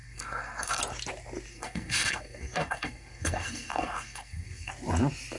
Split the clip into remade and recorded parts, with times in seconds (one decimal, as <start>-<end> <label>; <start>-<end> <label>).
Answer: 0.0-0.8 remade; 0.8-1.5 recorded; 1.5-4.7 remade; 4.7-5.4 recorded